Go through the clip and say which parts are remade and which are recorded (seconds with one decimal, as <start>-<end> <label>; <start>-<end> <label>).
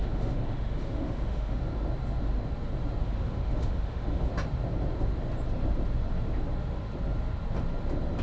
0.0-1.6 remade; 1.6-3.0 recorded; 3.0-4.3 remade; 4.3-8.2 recorded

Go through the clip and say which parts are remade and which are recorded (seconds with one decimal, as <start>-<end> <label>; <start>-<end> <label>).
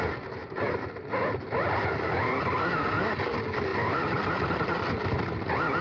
0.0-5.8 recorded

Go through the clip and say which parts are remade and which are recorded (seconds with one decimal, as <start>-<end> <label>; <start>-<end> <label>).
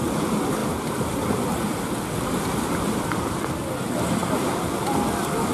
0.0-5.5 recorded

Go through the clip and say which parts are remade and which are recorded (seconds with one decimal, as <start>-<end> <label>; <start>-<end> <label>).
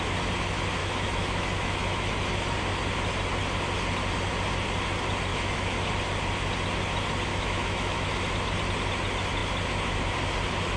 0.0-0.8 recorded; 0.8-2.1 remade; 2.1-5.3 recorded; 5.3-5.9 remade; 5.9-7.3 recorded; 7.3-8.2 remade; 8.2-10.8 recorded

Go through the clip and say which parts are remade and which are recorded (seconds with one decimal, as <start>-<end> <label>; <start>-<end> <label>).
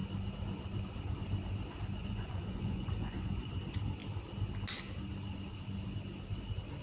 0.0-2.0 recorded; 2.0-3.6 remade; 3.6-6.8 recorded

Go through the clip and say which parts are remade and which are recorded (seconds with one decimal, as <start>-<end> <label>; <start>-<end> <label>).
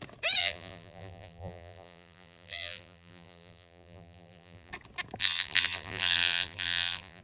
0.0-0.4 recorded; 0.4-4.7 remade; 4.7-5.2 recorded; 5.2-7.2 remade